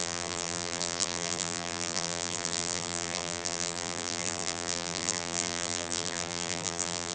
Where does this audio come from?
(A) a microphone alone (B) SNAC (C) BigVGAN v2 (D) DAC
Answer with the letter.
C